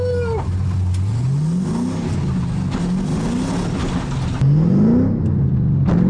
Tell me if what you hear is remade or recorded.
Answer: recorded